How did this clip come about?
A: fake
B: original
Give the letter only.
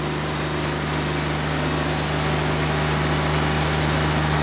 B